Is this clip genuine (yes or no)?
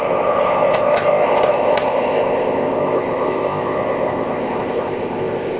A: no